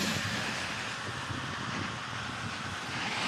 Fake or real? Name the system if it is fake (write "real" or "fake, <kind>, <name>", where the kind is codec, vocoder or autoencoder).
real